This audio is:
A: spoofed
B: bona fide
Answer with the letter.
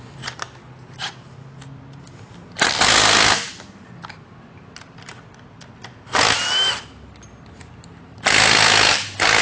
B